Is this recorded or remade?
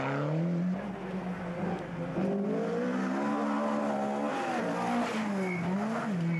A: recorded